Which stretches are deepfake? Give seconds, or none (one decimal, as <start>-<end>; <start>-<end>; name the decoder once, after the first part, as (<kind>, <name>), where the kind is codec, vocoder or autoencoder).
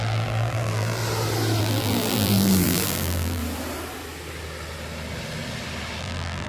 0.0-1.0 (vocoder, BigVGAN v2); 1.6-3.4; 6.0-6.5